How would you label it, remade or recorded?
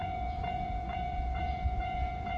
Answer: remade